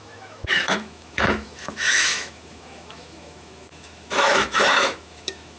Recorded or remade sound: remade